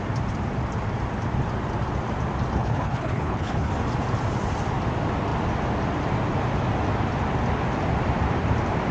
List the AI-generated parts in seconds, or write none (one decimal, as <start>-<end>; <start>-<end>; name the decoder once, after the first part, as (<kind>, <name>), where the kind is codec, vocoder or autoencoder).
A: 2.6-3.7 (codec, HILCodec)